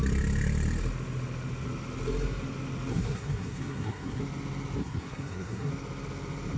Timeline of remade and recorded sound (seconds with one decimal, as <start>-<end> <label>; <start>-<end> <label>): 0.0-2.9 recorded; 2.9-4.2 remade; 4.2-4.8 recorded; 4.8-5.7 remade; 5.7-6.6 recorded